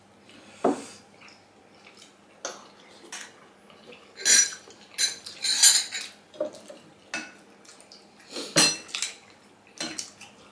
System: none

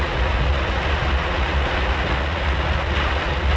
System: vocoder, Vocos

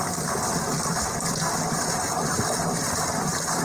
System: none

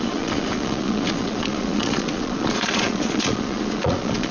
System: vocoder, Vocos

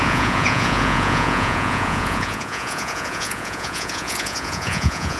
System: vocoder, Vocos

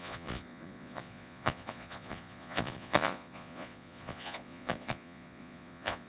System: vocoder, Vocos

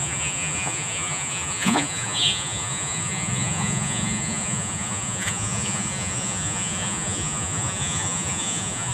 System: vocoder, Vocos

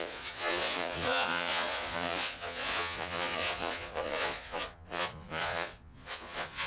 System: vocoder, Vocos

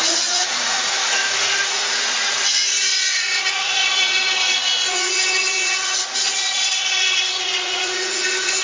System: vocoder, Vocos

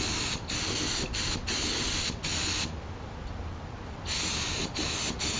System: none